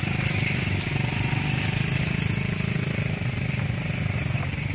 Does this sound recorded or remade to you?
recorded